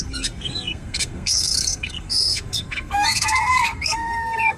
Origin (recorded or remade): remade